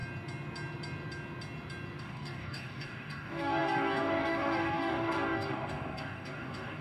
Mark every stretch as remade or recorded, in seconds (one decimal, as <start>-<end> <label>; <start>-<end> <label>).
0.0-2.0 recorded; 2.0-6.8 remade